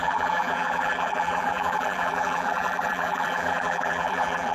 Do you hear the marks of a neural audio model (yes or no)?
yes